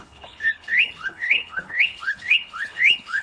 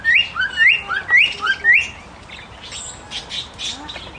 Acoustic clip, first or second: second